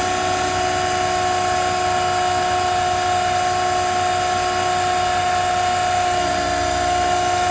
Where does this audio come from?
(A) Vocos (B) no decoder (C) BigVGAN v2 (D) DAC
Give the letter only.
B